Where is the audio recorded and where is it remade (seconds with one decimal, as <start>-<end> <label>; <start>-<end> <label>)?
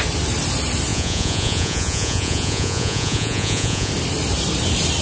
0.0-0.9 recorded; 0.9-3.9 remade; 3.9-5.0 recorded